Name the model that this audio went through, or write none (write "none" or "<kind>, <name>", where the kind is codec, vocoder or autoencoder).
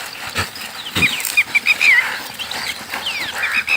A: none